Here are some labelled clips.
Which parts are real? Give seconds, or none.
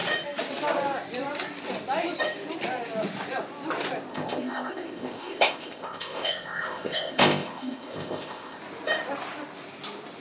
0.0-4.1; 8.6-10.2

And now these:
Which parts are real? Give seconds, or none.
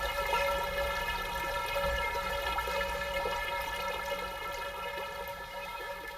0.0-5.3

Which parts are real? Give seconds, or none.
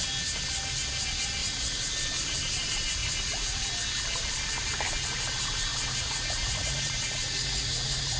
0.0-1.4; 1.9-3.0; 3.7-5.7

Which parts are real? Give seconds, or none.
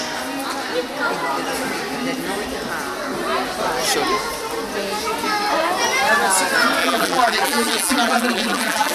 0.0-6.8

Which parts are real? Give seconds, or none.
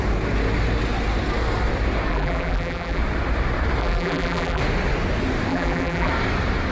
0.0-2.1; 3.0-3.8; 4.6-5.5; 6.1-6.7